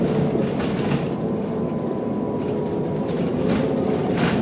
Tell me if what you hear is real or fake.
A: real